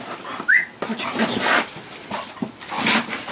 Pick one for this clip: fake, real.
real